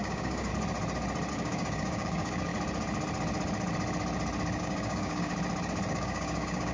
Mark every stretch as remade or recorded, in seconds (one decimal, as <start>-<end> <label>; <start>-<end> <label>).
0.0-0.5 remade; 0.5-1.3 recorded; 1.3-2.5 remade; 2.5-4.6 recorded; 4.6-5.3 remade; 5.3-5.9 recorded; 5.9-6.7 remade